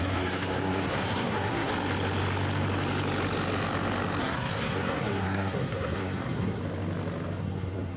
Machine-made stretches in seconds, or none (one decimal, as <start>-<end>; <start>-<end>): 0.0-1.7; 4.2-6.6; 7.4-8.0